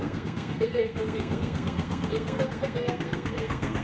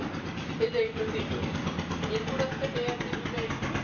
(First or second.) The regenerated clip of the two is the first